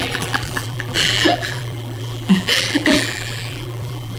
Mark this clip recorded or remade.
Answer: remade